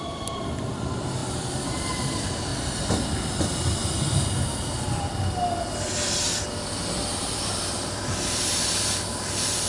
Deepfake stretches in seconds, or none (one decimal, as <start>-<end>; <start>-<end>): 0.0-1.2; 2.0-2.5; 3.2-3.8; 7.3-9.7